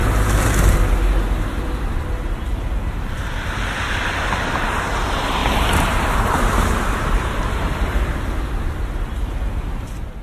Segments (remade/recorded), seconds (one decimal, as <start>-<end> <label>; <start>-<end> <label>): 0.0-5.4 recorded; 5.4-8.0 remade; 8.0-10.2 recorded

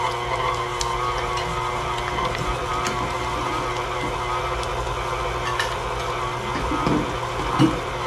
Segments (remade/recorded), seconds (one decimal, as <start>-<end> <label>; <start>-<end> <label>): 0.0-8.1 recorded

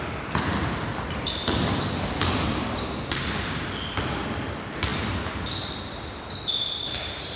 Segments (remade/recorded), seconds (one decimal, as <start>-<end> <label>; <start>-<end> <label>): 0.0-7.4 remade

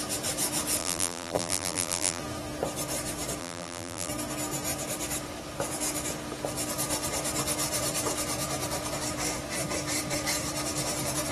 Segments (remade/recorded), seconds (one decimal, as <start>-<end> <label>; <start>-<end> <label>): 0.0-0.8 recorded; 0.8-2.2 remade; 2.2-3.4 recorded; 3.4-4.1 remade; 4.1-11.3 recorded

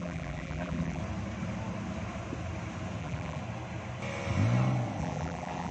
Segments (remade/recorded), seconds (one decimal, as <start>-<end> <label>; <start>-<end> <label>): 0.0-1.0 remade; 1.0-3.0 recorded; 3.0-3.4 remade; 3.4-5.0 recorded; 5.0-5.7 remade

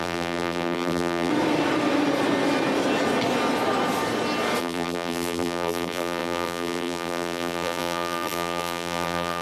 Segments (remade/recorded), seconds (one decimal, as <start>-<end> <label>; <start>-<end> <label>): 0.0-1.3 remade; 1.3-4.6 recorded; 4.6-9.4 remade

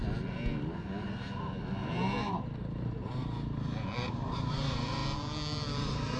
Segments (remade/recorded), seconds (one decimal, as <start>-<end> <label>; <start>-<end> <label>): 0.0-2.2 recorded; 2.2-5.0 remade; 5.0-5.8 recorded; 5.8-6.2 remade